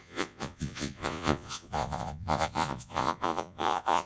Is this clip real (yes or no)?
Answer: no